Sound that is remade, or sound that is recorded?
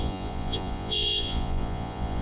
remade